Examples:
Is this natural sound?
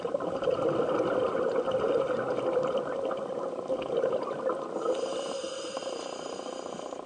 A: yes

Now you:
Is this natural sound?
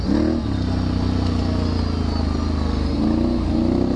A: yes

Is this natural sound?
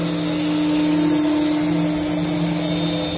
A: yes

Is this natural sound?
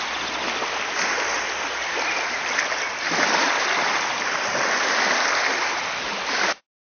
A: yes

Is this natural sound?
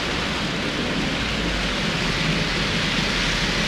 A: yes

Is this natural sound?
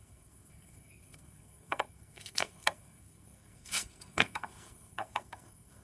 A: no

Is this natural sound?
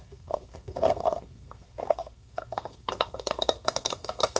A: no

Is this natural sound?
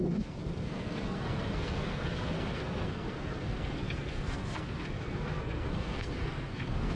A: no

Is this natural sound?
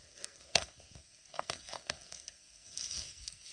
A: no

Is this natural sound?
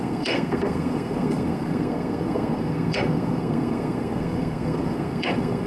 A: no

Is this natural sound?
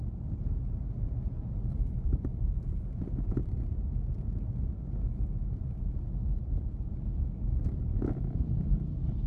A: yes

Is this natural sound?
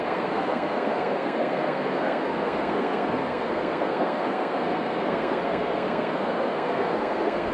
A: no